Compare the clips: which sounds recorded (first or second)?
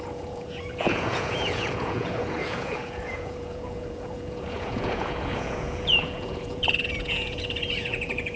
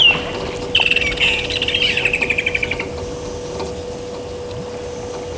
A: second